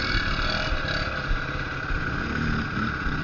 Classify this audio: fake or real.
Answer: real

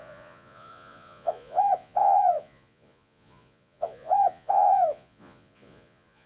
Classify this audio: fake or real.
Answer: fake